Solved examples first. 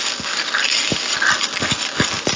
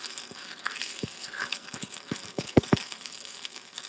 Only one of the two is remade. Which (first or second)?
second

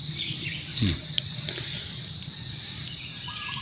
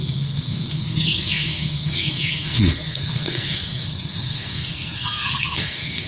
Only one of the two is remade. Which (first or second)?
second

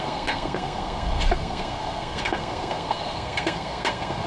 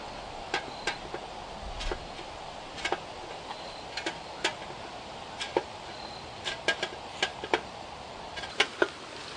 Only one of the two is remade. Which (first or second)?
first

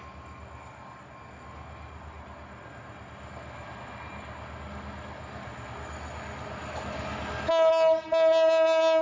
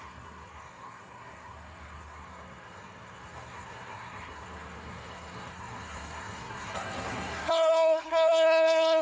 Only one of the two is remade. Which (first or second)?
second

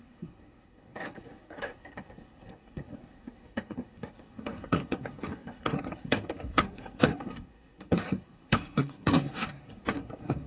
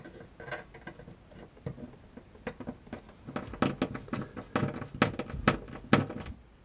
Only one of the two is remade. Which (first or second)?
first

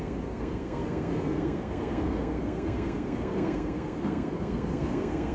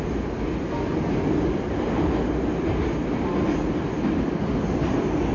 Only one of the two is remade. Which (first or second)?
first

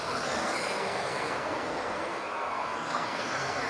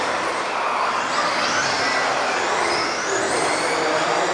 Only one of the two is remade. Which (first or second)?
first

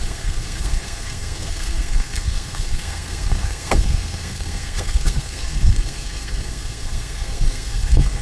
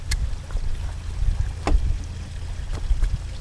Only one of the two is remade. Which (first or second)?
first